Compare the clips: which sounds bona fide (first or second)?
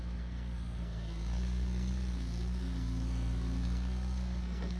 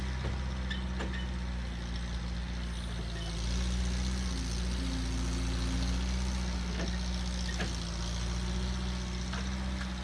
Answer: second